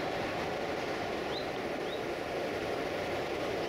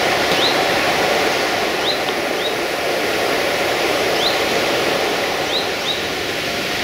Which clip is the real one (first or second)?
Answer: first